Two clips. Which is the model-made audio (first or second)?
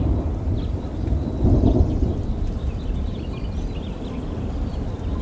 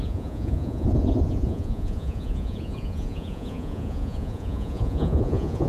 second